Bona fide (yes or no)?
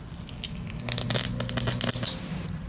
yes